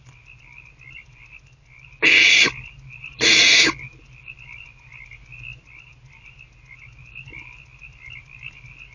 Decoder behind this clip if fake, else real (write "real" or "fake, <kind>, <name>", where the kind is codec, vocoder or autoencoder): real